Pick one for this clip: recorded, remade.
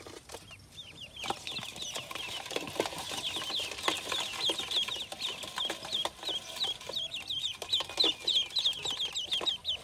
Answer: recorded